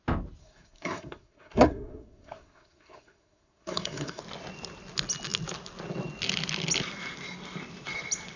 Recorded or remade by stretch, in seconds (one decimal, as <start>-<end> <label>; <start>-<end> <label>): 0.0-0.4 recorded; 0.4-4.2 remade; 4.2-8.4 recorded